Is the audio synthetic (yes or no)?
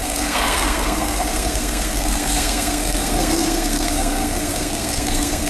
yes